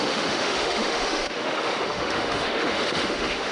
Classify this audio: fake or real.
fake